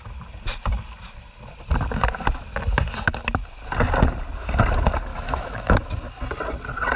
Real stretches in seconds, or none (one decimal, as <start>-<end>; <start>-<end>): 0.0-5.1; 5.8-7.0